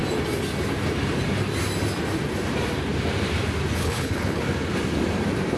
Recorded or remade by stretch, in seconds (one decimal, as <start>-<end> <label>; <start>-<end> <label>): 0.0-3.8 recorded; 3.8-4.4 remade; 4.4-5.6 recorded